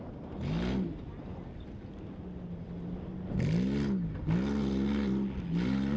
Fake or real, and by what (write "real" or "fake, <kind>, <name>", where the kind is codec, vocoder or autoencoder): real